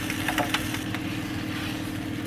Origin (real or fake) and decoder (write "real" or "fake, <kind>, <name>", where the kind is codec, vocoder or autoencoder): real